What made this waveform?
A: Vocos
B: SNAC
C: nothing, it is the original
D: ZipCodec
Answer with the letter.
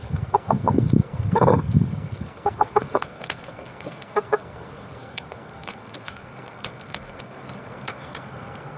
B